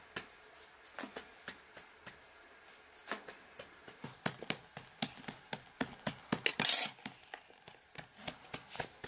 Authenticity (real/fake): real